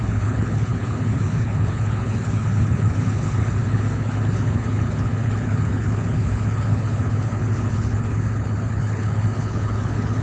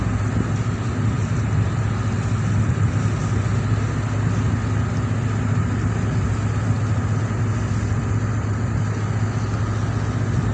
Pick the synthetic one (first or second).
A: first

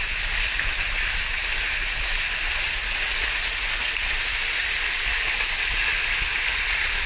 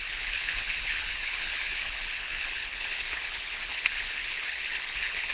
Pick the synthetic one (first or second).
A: second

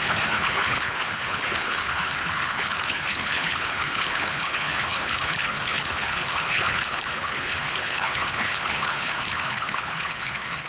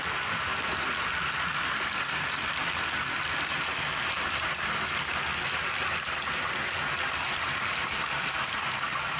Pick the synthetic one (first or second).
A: first